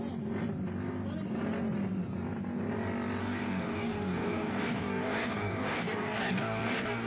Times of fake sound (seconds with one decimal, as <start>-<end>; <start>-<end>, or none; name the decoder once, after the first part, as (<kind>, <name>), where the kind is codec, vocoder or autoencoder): 3.2-7.1 (codec, DAC)